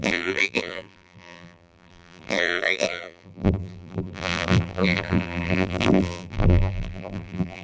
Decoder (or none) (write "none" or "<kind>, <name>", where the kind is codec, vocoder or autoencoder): vocoder, BigVGAN v2